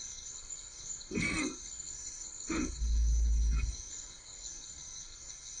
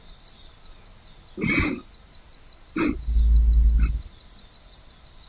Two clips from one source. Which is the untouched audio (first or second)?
second